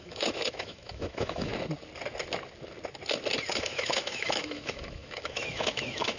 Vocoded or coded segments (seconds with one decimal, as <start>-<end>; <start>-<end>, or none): 0.0-1.5; 3.5-6.2

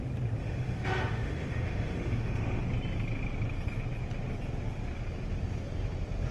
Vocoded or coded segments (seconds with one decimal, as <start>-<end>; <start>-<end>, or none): 0.4-2.6

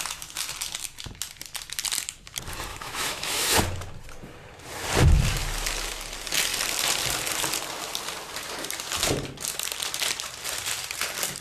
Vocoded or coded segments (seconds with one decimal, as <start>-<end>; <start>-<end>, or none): 2.7-3.6

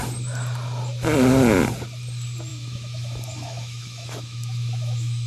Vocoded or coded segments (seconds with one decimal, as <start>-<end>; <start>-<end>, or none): 2.5-5.3

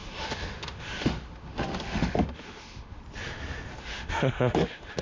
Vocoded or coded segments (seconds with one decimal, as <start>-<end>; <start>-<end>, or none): 0.0-3.0; 3.7-5.0

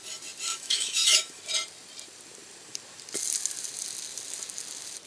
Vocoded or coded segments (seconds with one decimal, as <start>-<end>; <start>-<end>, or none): 0.5-1.4

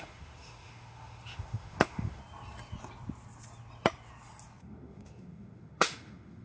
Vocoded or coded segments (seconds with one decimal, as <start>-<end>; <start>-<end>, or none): 0.0-2.2; 4.6-6.4

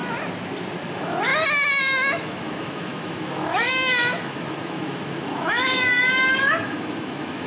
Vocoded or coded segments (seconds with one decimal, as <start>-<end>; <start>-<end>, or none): 0.9-1.3; 1.8-7.5